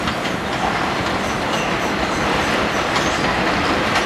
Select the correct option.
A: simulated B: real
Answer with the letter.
B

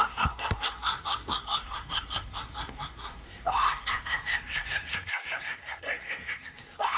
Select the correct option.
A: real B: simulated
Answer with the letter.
B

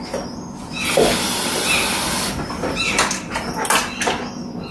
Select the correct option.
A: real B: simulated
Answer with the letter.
A